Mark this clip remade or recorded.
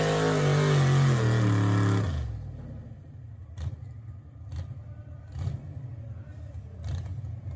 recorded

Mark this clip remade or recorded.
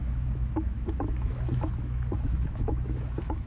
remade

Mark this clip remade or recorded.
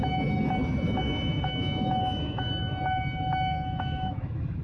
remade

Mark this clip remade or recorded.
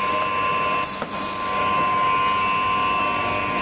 recorded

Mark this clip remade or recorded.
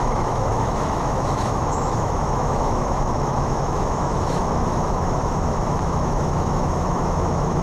remade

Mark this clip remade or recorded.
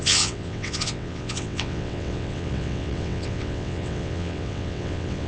remade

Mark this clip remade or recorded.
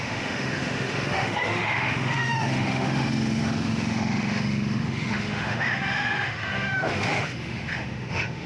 remade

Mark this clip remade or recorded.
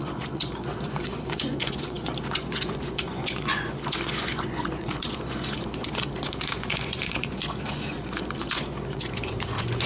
remade